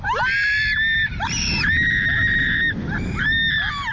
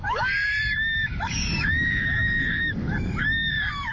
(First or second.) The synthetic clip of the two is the second